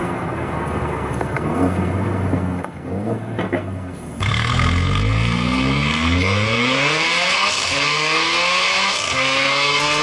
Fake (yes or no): yes